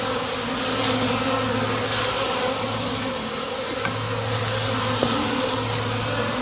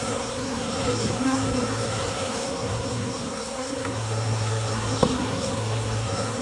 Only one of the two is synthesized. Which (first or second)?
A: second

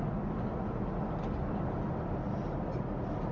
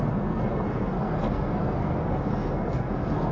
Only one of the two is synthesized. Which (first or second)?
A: second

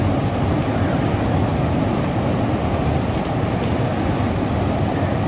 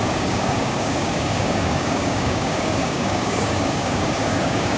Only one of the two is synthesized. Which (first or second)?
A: second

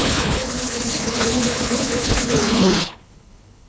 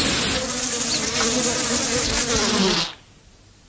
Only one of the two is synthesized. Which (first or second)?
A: first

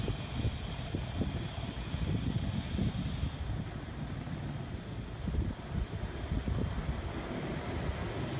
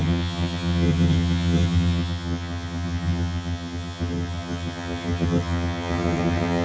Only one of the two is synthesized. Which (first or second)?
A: second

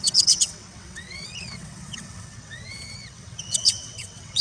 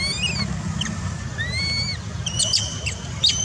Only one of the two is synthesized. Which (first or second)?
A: first